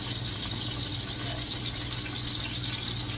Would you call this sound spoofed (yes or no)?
no